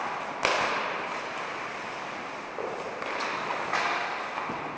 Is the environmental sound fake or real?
real